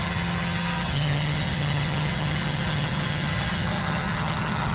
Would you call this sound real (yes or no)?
no